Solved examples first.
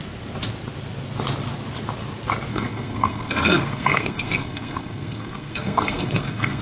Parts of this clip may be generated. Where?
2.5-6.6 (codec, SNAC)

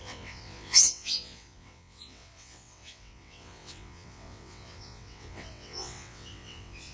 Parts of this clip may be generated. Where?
0.0-6.9 (vocoder, WaveNeXt)